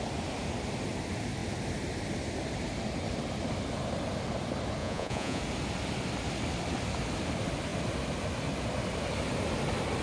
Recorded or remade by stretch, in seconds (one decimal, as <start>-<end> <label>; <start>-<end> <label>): 0.0-4.8 recorded; 4.8-5.4 remade; 5.4-10.0 recorded